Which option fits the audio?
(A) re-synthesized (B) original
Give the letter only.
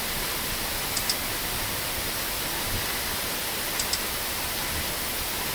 B